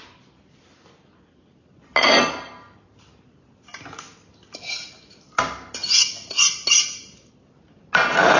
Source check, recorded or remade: recorded